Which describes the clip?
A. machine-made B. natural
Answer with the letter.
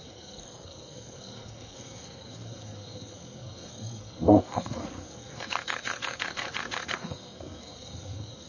A